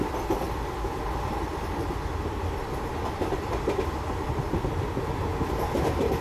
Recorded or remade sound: recorded